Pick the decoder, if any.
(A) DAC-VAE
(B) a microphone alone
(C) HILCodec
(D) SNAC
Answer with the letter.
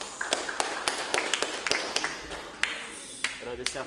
B